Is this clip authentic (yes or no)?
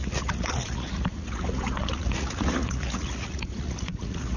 no